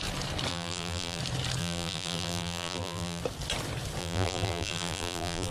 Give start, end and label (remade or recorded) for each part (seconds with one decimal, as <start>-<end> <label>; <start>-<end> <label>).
0.0-0.5 recorded; 0.5-1.2 remade; 1.2-1.6 recorded; 1.6-3.2 remade; 3.2-4.0 recorded; 4.0-5.5 remade